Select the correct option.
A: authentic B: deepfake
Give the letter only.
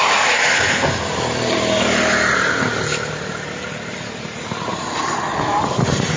A